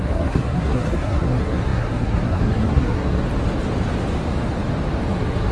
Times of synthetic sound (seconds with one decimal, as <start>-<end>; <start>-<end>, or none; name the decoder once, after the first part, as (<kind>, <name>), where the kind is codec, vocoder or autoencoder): 0.0-3.2 (codec, SNAC); 5.1-5.5